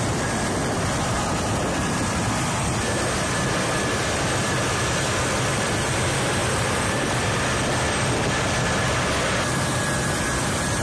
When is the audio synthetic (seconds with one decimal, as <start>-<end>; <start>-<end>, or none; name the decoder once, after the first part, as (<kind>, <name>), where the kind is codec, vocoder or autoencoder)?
6.4-7.4 (vocoder, BigVGAN v2)